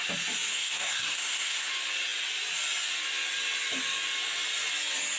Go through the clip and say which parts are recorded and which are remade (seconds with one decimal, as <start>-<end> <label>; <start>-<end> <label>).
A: 0.0-0.5 recorded; 0.5-1.7 remade; 1.7-5.2 recorded